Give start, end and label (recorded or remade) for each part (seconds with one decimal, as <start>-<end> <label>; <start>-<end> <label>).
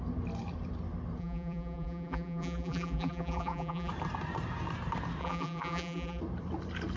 0.0-1.2 recorded; 1.2-3.9 remade; 3.9-5.2 recorded; 5.2-6.2 remade; 6.2-7.0 recorded